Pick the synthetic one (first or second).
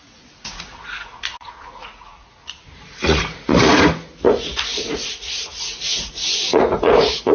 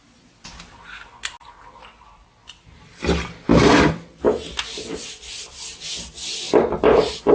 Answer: first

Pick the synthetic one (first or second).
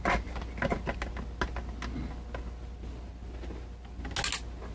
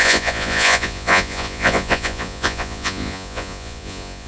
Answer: second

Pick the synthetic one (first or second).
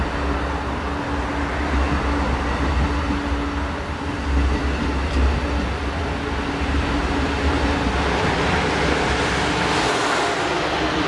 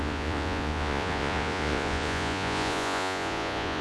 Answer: second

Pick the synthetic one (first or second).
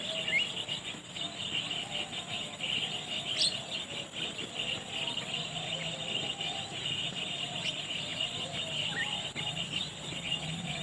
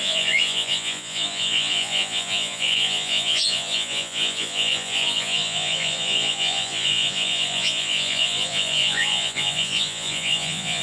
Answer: second